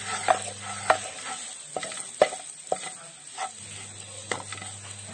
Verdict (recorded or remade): recorded